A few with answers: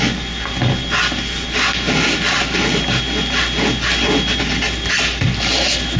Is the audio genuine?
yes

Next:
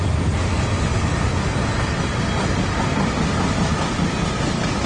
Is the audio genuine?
yes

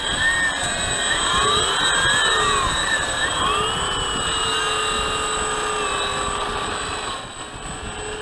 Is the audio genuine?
yes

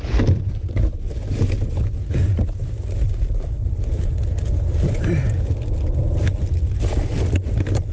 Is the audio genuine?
yes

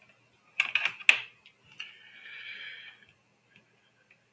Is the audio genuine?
yes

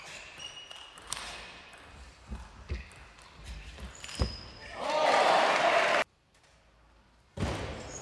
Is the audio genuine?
yes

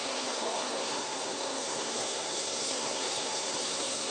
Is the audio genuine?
no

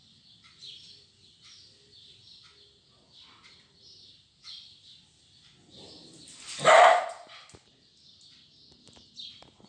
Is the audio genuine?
yes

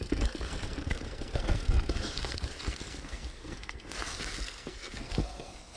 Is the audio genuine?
no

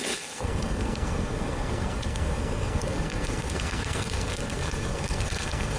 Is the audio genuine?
no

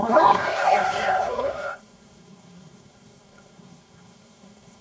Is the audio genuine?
no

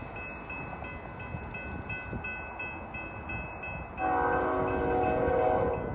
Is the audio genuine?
yes